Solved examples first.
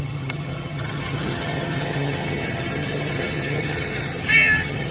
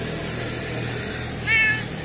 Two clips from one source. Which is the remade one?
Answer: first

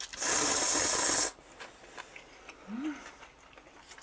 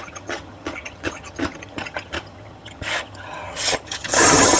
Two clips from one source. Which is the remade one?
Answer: second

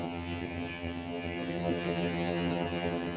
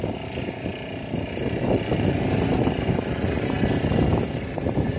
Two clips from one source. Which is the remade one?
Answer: first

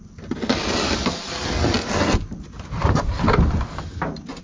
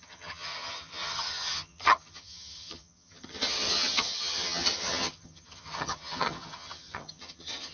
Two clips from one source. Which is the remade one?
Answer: second